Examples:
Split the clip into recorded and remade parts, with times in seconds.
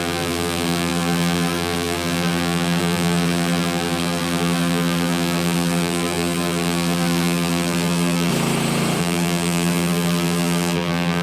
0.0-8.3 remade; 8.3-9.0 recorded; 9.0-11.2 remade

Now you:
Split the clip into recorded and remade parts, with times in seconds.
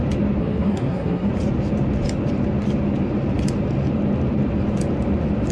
0.0-0.4 recorded; 0.4-1.3 remade; 1.3-5.5 recorded